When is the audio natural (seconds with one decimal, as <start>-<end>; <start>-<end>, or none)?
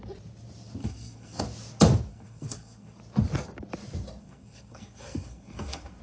0.0-0.8; 1.4-2.1; 3.0-4.2